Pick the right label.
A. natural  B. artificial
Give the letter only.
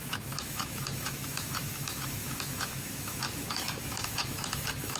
B